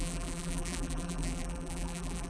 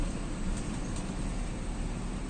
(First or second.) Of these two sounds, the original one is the second